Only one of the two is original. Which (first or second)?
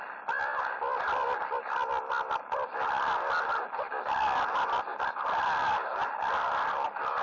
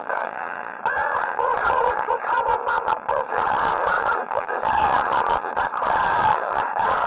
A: first